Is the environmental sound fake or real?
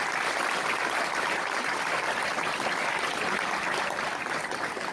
real